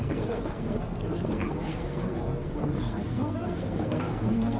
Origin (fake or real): fake